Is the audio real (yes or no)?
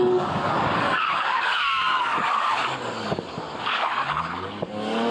no